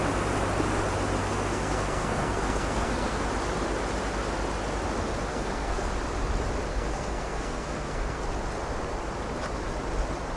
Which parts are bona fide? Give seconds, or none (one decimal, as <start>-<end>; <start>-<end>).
0.0-1.2; 3.3-5.3; 5.9-6.7; 8.2-10.4